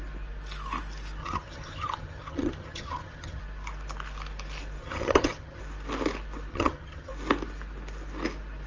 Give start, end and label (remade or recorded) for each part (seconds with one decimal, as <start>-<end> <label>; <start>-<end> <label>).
0.0-1.2 recorded; 1.2-3.4 remade; 3.4-4.8 recorded; 4.8-5.6 remade; 5.6-6.5 recorded; 6.5-7.1 remade; 7.1-8.7 recorded